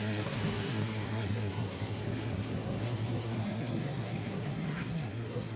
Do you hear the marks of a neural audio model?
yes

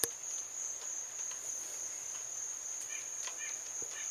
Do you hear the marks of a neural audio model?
no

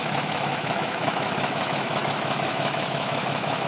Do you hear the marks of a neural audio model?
yes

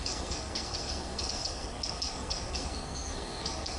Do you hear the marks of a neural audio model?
yes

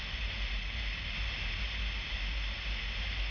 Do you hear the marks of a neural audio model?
no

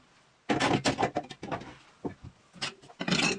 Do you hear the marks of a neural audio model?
no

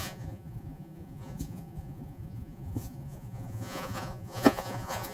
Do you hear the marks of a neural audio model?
yes